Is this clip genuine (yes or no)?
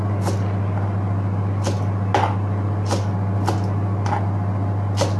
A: yes